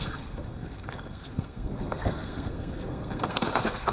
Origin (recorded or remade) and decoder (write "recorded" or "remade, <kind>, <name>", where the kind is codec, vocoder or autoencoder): remade, codec, SNAC